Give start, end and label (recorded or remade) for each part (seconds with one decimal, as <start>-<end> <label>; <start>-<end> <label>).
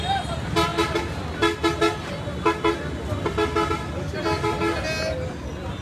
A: 0.0-5.8 recorded